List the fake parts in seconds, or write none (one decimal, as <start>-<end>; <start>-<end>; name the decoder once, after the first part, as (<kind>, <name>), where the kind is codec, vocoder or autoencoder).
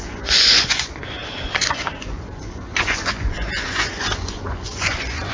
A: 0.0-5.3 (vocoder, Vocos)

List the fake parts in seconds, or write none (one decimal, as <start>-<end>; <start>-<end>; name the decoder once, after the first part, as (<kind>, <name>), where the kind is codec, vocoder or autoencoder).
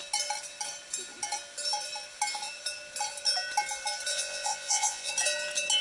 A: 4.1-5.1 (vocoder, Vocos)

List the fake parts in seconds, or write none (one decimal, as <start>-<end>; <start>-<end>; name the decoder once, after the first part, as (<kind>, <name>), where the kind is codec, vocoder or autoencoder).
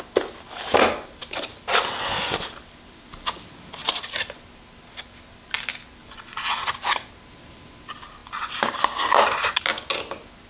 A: 6.0-6.7 (vocoder, Vocos)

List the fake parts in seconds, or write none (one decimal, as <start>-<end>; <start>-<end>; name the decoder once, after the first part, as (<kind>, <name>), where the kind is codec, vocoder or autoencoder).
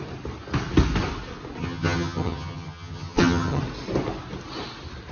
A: 1.6-3.6 (vocoder, HiFi-GAN)